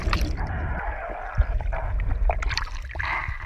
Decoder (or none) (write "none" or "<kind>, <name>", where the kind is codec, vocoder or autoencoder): vocoder, BigVGAN v2